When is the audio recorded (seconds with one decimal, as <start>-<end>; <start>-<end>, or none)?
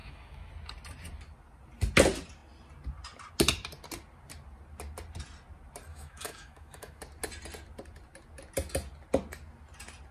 0.5-5.9; 7.0-10.1